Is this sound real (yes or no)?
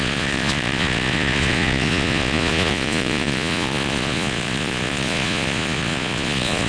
no